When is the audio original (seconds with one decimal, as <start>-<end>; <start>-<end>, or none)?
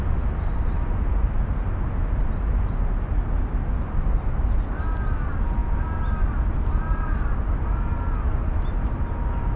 0.0-9.6